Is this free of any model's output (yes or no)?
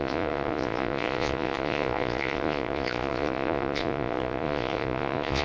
no